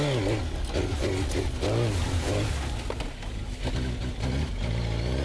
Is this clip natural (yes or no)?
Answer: yes